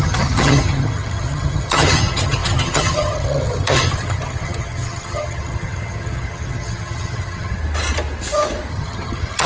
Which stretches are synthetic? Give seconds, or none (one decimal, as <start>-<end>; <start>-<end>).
0.0-7.6; 8.7-9.5